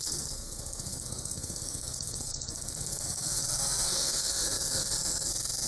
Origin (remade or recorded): remade